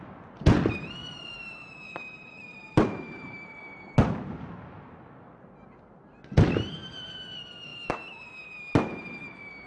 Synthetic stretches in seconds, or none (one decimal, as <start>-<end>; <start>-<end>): 1.0-3.6